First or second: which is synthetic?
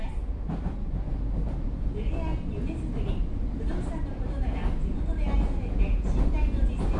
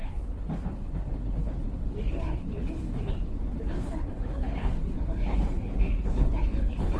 second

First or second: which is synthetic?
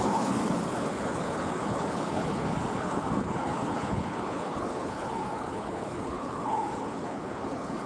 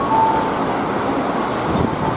first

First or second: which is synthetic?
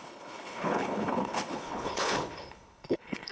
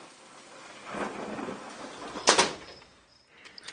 first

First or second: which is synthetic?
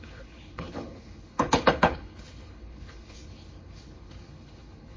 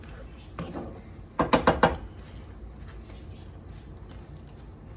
first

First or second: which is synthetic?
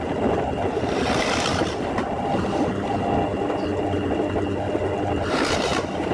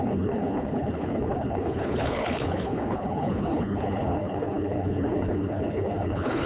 second